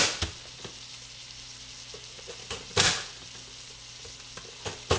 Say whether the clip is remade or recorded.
recorded